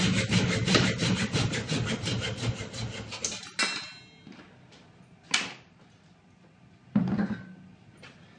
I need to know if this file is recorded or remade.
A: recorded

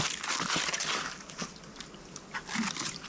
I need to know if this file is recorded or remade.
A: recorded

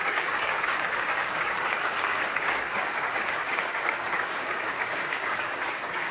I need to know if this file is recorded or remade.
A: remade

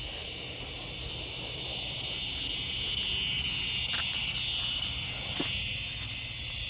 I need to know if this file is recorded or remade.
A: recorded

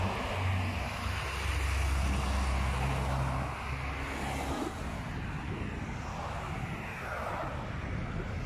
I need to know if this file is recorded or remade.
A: recorded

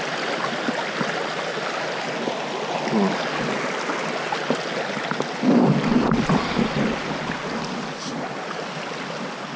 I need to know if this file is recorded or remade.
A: recorded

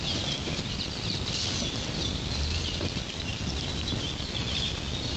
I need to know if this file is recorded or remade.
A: recorded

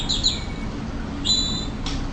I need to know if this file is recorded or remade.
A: recorded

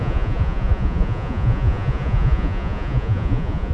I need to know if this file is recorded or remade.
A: remade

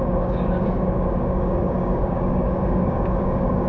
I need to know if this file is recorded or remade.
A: remade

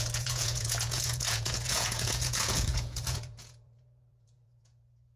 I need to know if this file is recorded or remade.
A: remade